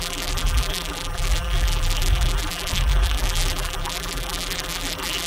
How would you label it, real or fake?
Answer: fake